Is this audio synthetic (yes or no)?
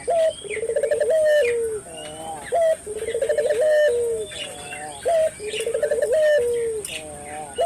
no